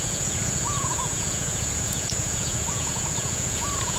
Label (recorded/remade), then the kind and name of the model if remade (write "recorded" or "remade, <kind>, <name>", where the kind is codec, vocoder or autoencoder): remade, vocoder, Vocos